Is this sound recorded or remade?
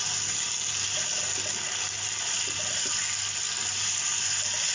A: recorded